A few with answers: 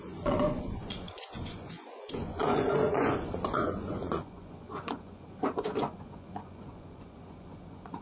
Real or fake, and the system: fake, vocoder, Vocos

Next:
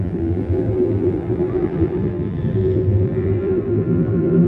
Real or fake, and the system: fake, vocoder, BigVGAN v2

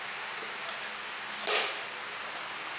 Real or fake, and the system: real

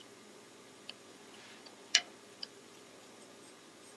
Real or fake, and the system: fake, vocoder, Vocos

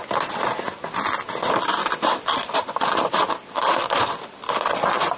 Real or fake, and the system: real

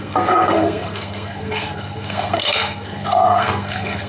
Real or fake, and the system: fake, codec, SNAC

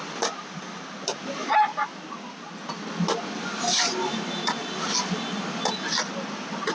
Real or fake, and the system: real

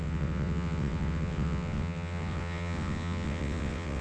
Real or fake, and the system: fake, vocoder, WaveNeXt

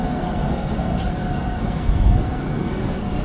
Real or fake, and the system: fake, codec, SNAC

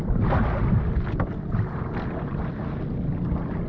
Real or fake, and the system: real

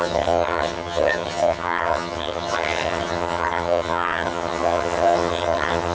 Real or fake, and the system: fake, vocoder, HiFi-GAN